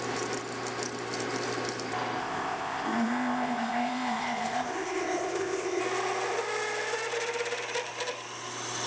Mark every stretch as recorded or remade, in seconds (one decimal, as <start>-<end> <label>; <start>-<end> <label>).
0.0-2.2 recorded; 2.2-5.8 remade; 5.8-8.9 recorded